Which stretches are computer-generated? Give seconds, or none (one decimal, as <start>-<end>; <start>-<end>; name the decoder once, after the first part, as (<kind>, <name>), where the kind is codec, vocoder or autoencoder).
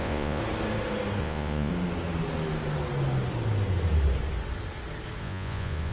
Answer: 0.0-0.4 (vocoder, Vocos); 1.2-1.7; 5.2-5.9